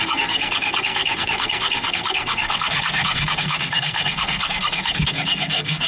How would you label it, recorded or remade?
remade